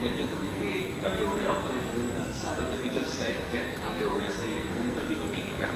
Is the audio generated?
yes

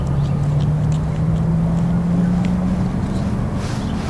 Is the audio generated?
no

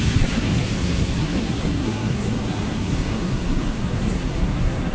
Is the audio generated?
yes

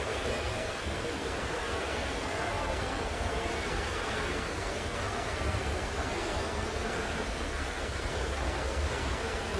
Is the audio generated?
yes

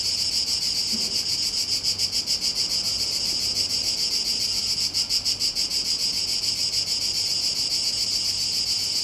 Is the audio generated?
no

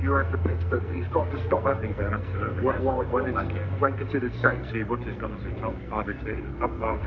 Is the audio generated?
yes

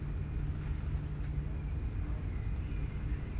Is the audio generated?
no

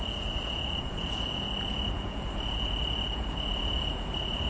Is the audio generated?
yes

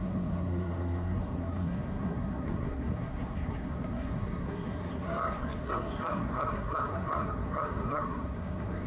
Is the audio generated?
yes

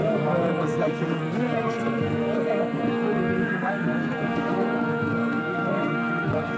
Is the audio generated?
yes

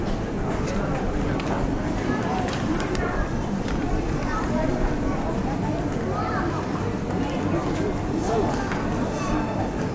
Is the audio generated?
no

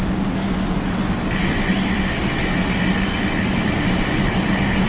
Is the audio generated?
no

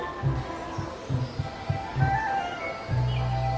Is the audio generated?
no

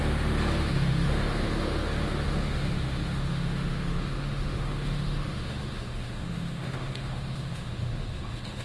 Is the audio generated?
yes